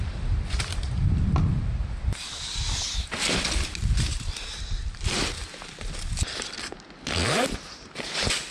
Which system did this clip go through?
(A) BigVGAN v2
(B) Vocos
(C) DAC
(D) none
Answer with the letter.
D